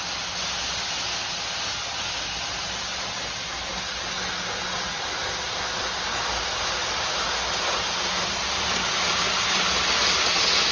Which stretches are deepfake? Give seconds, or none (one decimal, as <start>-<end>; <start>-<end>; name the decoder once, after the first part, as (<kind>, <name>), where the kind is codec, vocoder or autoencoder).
none